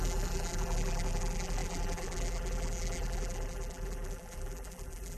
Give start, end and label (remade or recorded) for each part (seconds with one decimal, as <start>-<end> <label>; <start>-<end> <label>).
0.0-5.2 remade